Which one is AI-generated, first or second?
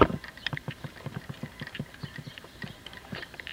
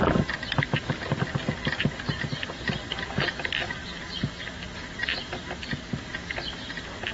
first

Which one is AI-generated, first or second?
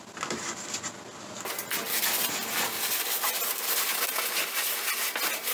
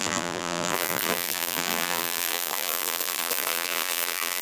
second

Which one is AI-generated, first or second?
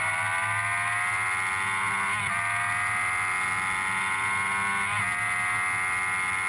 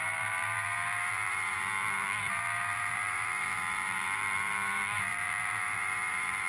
second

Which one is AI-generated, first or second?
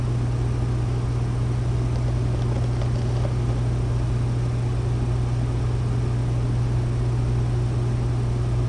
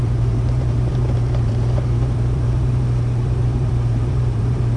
second